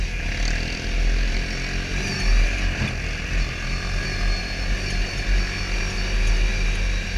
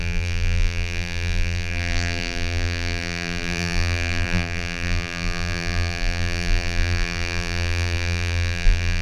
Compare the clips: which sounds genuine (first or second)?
first